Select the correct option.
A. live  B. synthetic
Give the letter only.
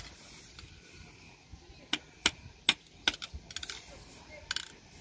A